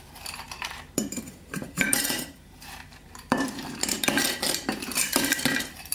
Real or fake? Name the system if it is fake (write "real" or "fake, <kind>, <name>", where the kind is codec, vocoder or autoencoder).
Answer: fake, vocoder, BigVGAN v2